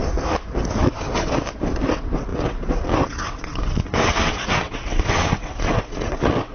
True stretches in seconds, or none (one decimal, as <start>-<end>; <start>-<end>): 0.0-1.9